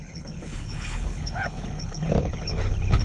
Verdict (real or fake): fake